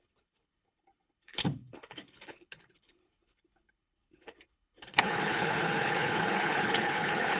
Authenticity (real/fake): fake